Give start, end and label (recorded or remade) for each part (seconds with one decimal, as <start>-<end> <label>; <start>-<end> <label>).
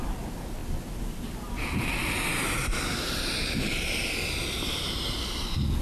0.0-2.3 recorded; 2.3-4.9 remade; 4.9-5.8 recorded